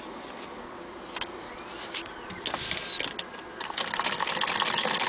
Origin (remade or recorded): recorded